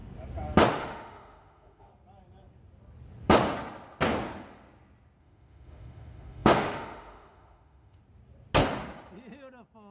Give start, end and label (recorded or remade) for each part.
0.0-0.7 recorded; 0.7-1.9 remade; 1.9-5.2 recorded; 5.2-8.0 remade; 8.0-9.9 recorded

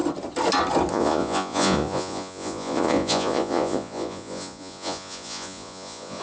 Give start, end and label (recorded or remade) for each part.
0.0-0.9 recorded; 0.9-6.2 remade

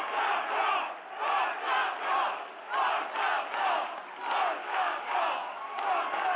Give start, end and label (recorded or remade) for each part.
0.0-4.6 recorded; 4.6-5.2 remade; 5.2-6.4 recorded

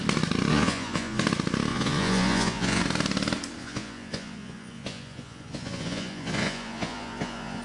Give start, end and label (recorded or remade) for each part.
0.0-0.5 recorded; 0.5-1.2 remade; 1.2-1.7 recorded; 1.7-2.8 remade; 2.8-3.6 recorded; 3.6-7.6 remade